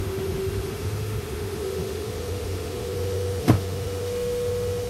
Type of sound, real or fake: fake